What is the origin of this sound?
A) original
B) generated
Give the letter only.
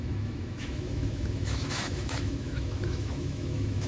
B